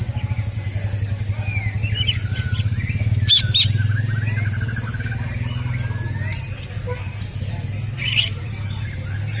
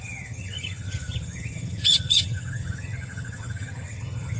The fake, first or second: second